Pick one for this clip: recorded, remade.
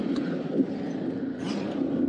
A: recorded